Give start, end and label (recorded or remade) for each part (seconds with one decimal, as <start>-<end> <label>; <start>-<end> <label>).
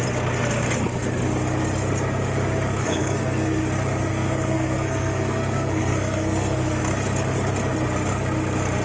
0.0-2.8 recorded; 2.8-3.6 remade; 3.6-4.1 recorded; 4.1-6.8 remade; 6.8-8.8 recorded